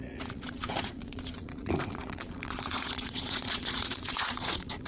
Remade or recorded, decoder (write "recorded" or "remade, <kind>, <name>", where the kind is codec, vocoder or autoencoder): remade, vocoder, Vocos